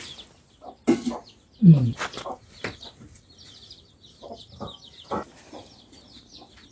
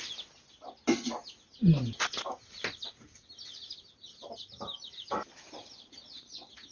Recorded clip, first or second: second